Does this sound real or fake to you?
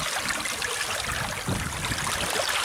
real